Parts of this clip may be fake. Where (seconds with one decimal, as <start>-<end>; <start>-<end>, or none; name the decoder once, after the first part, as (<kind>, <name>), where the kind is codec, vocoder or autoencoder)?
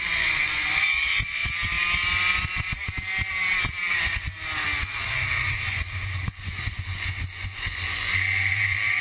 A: 0.0-1.4 (vocoder, Vocos); 3.9-4.3; 5.0-9.0